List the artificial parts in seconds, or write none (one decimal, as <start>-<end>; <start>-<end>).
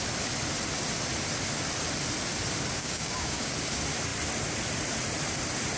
2.8-3.5